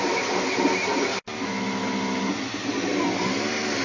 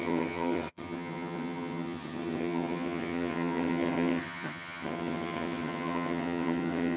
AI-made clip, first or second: second